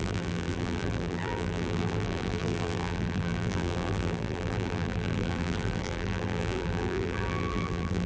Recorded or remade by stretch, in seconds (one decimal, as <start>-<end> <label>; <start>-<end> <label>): 0.0-8.1 remade